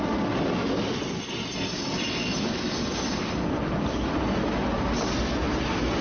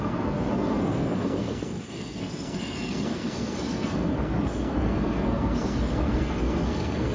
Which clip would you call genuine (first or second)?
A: first